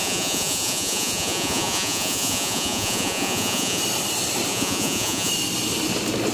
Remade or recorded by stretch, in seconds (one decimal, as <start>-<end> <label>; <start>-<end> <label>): 0.0-3.8 remade; 3.8-4.5 recorded; 4.5-5.3 remade; 5.3-6.3 recorded